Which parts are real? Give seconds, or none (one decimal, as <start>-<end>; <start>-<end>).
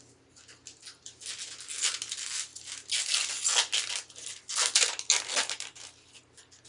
0.0-6.7